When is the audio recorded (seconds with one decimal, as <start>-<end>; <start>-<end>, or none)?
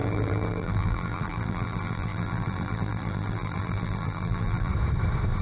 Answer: 4.7-5.4